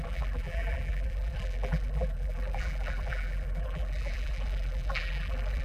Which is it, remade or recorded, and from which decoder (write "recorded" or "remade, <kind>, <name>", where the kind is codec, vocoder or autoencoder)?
remade, vocoder, BigVGAN v2